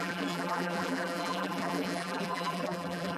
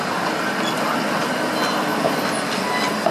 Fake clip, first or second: first